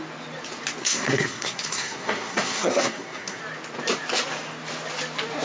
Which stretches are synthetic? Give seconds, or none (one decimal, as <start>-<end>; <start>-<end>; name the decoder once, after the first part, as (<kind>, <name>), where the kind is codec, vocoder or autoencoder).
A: 0.8-3.4 (codec, SNAC)